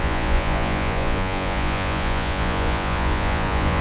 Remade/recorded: remade